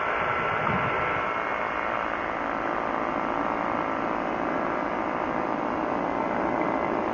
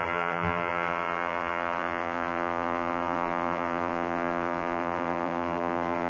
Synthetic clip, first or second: second